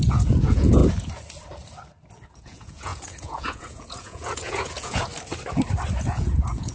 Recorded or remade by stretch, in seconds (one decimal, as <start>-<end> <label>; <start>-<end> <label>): 0.0-0.8 remade; 0.8-2.3 recorded; 2.3-5.1 remade; 5.1-6.1 recorded; 6.1-6.7 remade